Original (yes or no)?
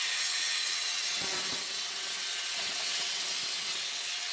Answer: no